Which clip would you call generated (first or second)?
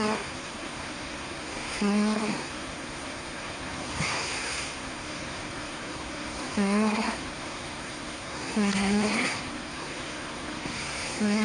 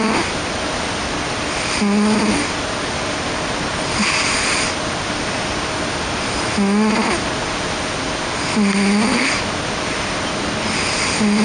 first